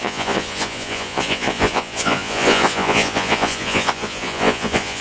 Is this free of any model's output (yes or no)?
no